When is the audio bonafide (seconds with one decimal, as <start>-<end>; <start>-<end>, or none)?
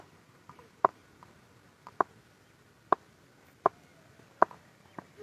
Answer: 1.0-4.1